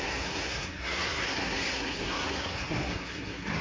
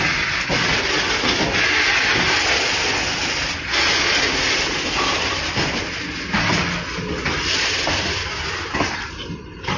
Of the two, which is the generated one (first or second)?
first